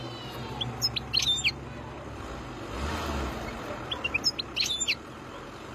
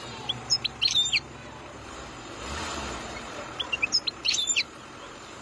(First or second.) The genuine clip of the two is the first